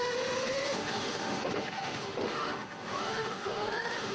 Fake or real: fake